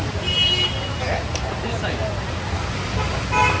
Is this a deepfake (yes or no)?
no